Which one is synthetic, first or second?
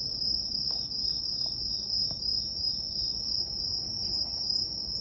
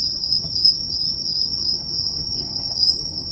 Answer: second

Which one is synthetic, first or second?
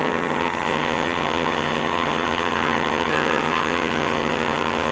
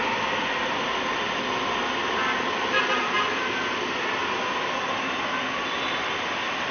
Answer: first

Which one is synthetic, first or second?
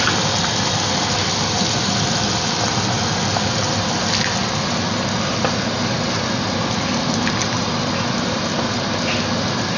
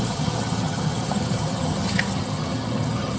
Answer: second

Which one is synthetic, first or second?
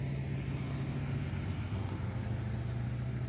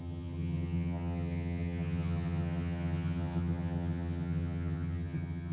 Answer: second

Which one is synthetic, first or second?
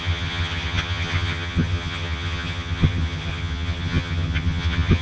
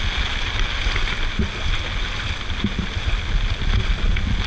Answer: first